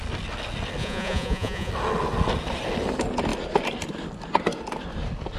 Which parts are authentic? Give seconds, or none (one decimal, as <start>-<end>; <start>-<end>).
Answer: 0.0-0.8; 1.7-5.4